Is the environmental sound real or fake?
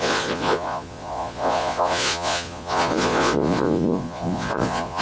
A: fake